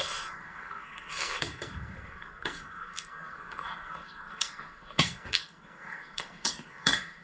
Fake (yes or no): yes